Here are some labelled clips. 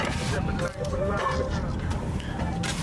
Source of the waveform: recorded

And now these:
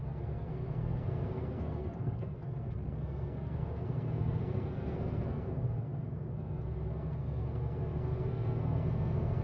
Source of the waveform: remade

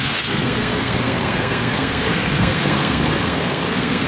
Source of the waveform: remade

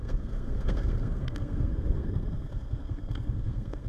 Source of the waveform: remade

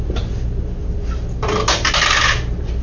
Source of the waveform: recorded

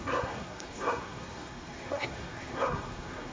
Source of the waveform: remade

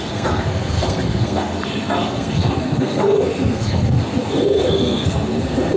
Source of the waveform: remade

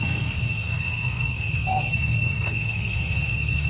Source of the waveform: remade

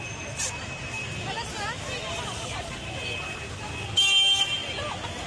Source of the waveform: recorded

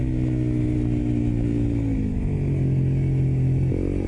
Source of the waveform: recorded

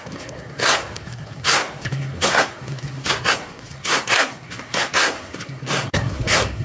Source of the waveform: remade